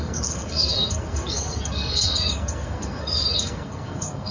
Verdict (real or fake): fake